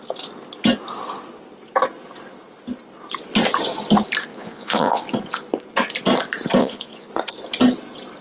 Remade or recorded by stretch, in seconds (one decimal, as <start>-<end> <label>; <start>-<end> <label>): 0.0-4.3 recorded; 4.3-5.0 remade; 5.0-6.6 recorded; 6.6-7.1 remade; 7.1-8.2 recorded